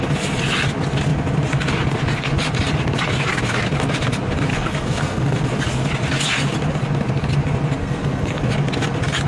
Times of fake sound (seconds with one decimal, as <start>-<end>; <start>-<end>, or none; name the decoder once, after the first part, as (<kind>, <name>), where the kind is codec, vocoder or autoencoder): 4.5-5.4 (codec, SNAC); 7.8-8.4